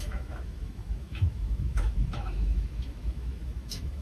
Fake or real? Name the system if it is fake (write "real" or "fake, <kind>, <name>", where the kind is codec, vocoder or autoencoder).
fake, autoencoder, DAC-VAE